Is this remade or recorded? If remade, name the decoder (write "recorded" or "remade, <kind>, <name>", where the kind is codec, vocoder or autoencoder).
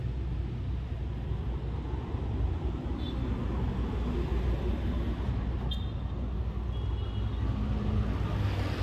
recorded